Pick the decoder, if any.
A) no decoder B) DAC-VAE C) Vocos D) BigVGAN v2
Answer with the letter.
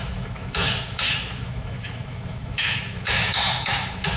B